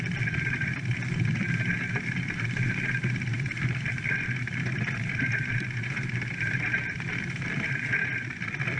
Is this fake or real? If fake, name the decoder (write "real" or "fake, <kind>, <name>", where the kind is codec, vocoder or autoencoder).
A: real